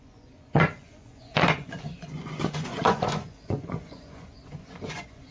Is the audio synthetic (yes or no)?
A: yes